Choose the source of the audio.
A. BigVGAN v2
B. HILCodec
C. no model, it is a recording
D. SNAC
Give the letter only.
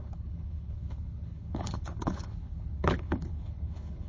B